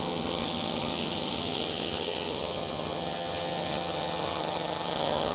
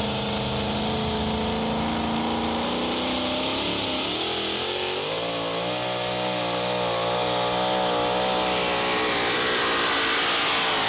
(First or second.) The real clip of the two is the second